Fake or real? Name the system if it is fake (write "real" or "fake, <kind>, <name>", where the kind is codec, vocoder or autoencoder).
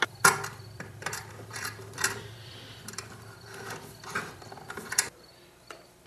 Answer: fake, vocoder, BigVGAN v2